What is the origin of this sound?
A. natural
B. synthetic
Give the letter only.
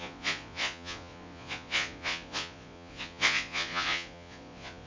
B